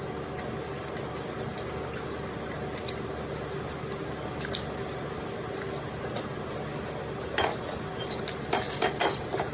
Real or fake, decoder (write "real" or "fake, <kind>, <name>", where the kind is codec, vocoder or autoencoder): real